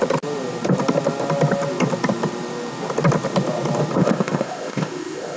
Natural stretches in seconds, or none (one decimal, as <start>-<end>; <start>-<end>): 0.0-4.0